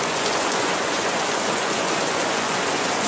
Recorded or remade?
remade